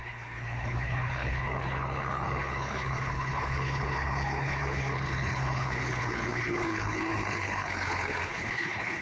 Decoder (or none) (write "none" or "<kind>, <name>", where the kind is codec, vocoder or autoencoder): codec, HILCodec